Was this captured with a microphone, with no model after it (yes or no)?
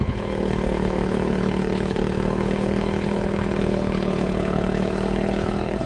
no